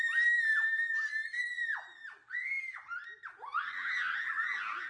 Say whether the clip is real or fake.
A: real